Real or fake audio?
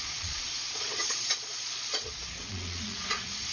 fake